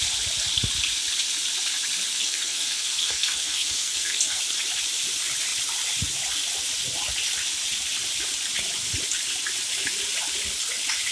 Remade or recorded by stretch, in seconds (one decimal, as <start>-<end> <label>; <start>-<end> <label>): 0.0-2.1 recorded; 2.1-4.4 remade; 4.4-11.1 recorded